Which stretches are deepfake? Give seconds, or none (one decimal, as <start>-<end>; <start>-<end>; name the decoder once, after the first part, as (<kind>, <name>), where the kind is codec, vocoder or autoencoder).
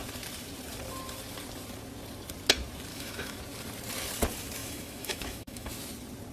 2.9-3.4 (autoencoder, DAC-VAE); 4.6-5.7